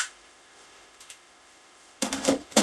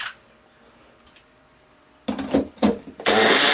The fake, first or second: first